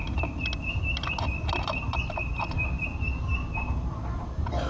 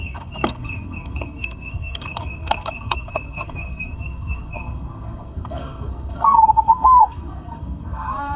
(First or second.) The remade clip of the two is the second